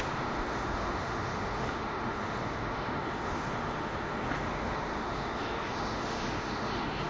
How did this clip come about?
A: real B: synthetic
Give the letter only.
B